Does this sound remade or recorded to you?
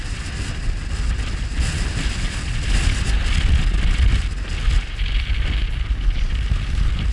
recorded